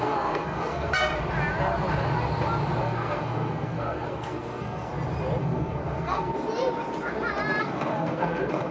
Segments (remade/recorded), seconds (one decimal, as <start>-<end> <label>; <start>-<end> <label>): 0.0-1.1 remade; 1.1-2.8 recorded; 2.8-4.9 remade; 4.9-5.4 recorded; 5.4-6.3 remade; 6.3-7.6 recorded; 7.6-8.7 remade